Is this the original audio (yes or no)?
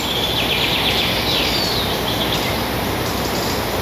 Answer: yes